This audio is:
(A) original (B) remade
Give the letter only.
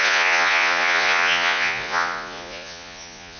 B